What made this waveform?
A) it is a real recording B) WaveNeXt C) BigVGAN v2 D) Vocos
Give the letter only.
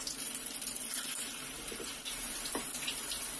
C